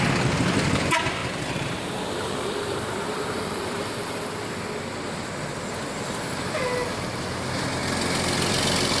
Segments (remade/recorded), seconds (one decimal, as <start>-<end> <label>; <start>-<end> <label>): 0.0-1.2 recorded; 1.2-3.8 remade; 3.8-9.0 recorded